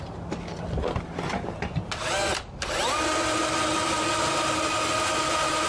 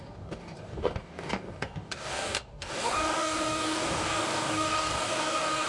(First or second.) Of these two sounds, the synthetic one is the second